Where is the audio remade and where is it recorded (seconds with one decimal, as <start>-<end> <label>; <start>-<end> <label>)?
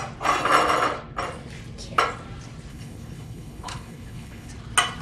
0.0-2.7 recorded; 2.7-4.5 remade; 4.5-5.0 recorded